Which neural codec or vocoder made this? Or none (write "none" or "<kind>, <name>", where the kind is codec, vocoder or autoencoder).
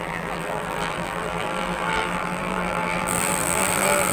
vocoder, BigVGAN v2